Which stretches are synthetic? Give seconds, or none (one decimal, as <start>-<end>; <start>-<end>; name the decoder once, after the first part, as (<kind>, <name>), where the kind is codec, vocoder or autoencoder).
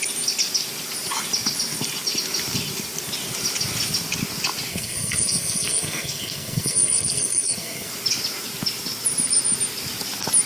4.7-7.9 (codec, SNAC)